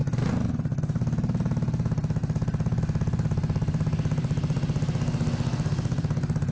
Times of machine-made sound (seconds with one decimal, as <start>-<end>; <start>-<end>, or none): none